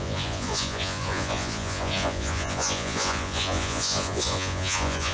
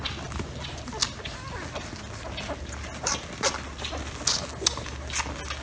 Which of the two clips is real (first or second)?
second